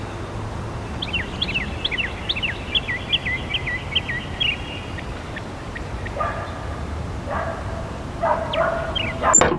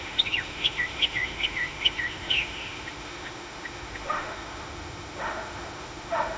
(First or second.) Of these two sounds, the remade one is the second